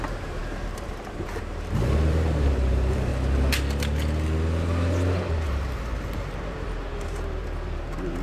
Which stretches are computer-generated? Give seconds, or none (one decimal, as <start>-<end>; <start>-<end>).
0.0-3.1; 5.3-8.2